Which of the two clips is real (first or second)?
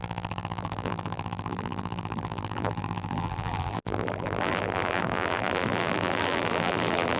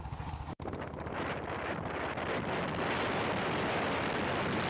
second